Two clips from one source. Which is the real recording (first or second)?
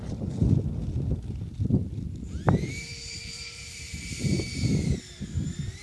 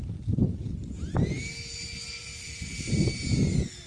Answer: second